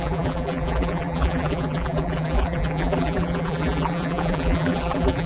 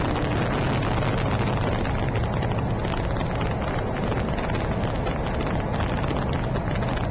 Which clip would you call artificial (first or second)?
first